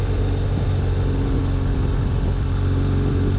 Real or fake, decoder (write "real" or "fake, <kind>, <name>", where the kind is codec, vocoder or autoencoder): real